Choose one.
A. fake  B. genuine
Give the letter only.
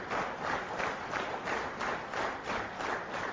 B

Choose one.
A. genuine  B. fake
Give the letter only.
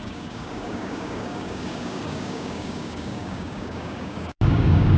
B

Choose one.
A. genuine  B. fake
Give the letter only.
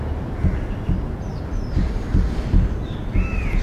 A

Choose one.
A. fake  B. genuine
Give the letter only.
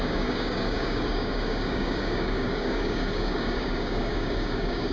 A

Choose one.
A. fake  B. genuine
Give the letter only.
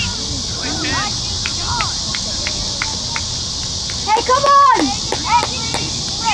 B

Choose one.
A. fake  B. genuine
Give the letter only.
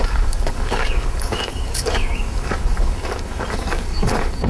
A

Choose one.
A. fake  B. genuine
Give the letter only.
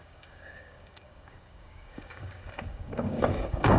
A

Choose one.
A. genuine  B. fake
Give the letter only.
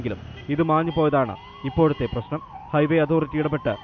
A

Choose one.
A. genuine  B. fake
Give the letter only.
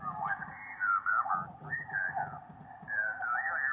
A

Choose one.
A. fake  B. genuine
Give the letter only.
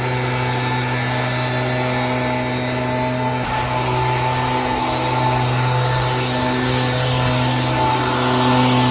B